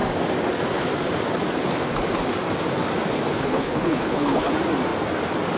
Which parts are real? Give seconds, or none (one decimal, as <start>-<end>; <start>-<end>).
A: 0.0-3.3; 4.5-5.6